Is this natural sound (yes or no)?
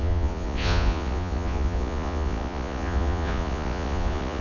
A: no